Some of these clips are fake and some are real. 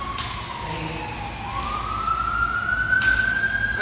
real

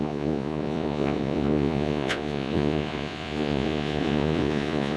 fake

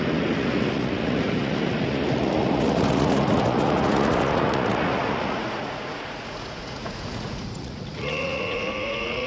fake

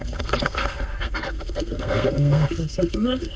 fake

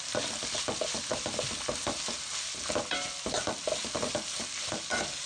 real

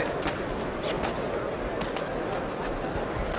real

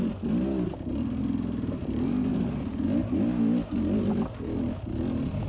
real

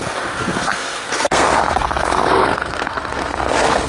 fake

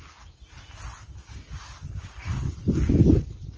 real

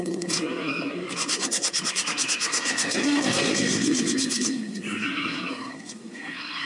fake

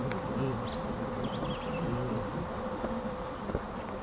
real